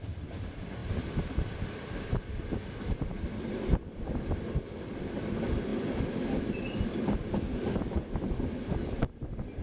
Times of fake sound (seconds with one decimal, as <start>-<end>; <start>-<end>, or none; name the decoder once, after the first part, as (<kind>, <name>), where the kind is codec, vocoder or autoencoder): none